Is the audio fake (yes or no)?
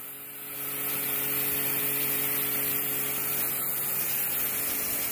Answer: no